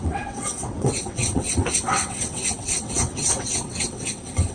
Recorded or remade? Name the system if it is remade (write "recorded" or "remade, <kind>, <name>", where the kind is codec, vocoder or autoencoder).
remade, vocoder, WaveNeXt